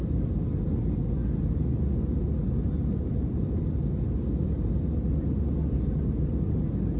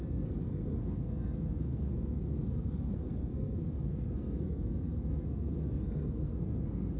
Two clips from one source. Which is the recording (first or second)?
first